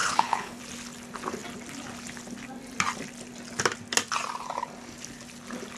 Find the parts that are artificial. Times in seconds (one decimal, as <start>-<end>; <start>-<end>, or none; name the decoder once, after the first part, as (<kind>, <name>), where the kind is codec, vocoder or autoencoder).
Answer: 0.0-0.6 (codec, HILCodec)